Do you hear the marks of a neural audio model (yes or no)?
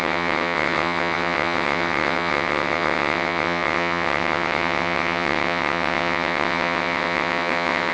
yes